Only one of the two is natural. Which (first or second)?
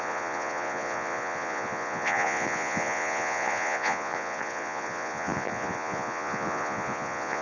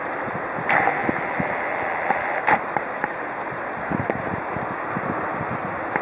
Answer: second